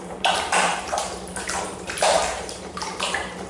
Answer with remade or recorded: remade